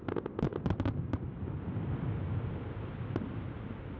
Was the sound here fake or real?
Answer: real